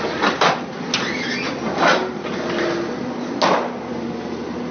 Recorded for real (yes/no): yes